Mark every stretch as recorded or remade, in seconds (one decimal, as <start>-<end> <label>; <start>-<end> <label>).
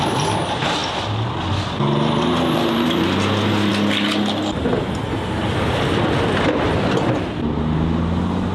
0.0-8.5 recorded